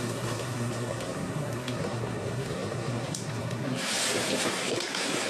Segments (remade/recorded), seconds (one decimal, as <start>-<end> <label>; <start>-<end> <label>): 0.0-3.9 remade; 3.9-4.4 recorded; 4.4-5.3 remade

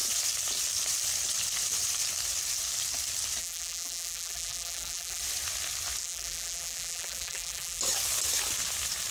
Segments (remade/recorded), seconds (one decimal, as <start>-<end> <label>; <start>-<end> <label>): 0.0-3.4 recorded; 3.4-5.2 remade; 5.2-6.0 recorded; 6.0-7.8 remade; 7.8-9.1 recorded

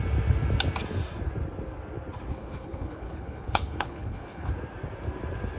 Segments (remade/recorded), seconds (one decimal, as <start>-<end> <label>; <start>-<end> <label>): 0.0-2.3 recorded; 2.3-4.5 remade; 4.5-5.6 recorded

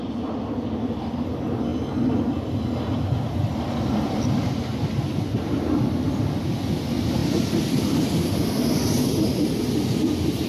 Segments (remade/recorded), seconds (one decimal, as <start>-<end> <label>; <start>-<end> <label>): 0.0-1.7 remade; 1.7-3.3 recorded; 3.3-4.7 remade; 4.7-6.5 recorded; 6.5-10.5 remade